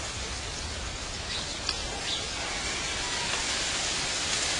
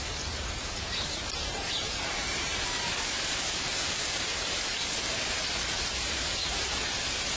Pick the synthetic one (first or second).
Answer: second